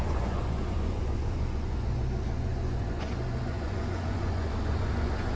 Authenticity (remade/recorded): remade